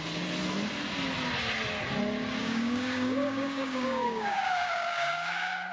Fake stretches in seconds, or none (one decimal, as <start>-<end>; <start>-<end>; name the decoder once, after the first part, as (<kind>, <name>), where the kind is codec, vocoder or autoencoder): 2.4-5.7 (codec, DAC)